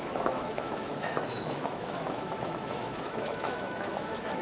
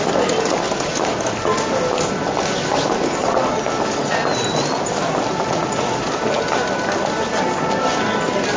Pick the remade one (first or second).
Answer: first